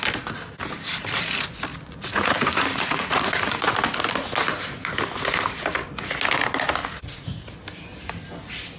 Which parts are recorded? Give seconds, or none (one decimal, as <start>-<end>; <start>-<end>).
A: 0.0-1.7; 3.7-6.8; 7.5-8.8